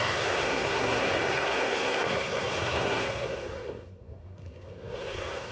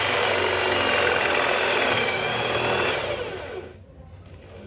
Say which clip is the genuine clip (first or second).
second